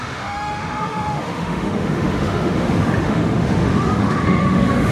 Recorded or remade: remade